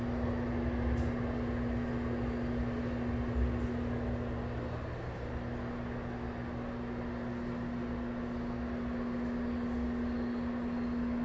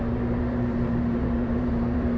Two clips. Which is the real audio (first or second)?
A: first